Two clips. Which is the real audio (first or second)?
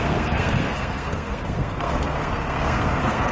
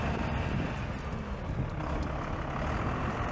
second